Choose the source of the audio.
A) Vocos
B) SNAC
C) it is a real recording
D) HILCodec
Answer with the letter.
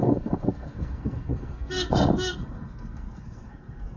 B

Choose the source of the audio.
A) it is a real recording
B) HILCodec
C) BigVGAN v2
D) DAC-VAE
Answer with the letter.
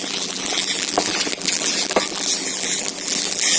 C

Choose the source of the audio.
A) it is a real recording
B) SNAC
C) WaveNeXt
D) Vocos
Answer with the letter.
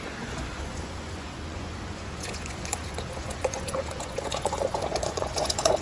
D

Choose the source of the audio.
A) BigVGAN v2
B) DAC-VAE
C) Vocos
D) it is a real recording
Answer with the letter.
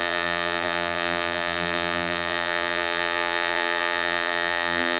A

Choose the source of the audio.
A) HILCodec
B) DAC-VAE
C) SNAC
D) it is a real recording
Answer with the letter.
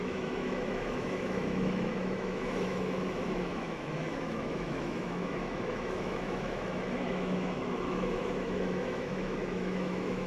B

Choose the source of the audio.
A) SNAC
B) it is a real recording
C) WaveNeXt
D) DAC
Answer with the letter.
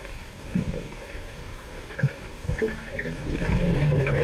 D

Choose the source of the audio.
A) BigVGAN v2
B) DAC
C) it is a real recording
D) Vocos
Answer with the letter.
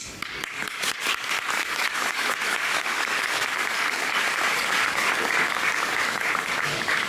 B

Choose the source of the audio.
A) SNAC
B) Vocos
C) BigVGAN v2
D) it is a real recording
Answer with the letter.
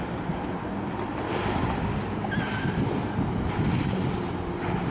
D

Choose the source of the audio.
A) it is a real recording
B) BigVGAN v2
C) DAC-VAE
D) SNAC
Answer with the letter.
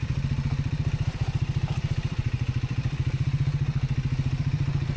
B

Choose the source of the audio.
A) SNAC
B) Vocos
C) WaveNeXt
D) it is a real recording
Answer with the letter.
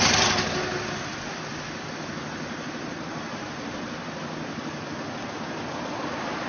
D